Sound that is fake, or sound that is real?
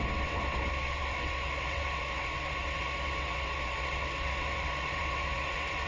fake